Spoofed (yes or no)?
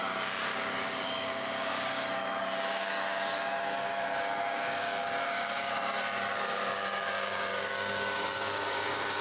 yes